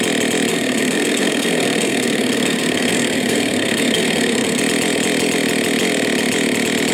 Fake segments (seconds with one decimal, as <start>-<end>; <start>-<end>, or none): 0.5-4.6